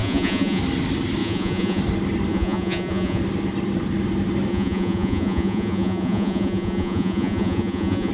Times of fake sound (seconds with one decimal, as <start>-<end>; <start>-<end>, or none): 0.0-0.6; 1.2-1.8; 2.3-3.2; 4.5-8.1